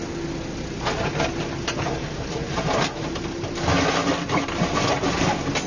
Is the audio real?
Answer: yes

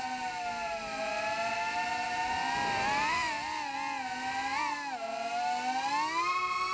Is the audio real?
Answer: yes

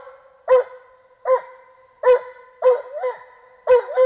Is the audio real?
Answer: yes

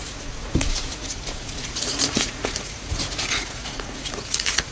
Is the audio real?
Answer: no